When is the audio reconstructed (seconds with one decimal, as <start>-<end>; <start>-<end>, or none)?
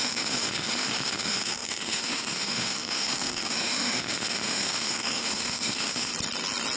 0.0-6.1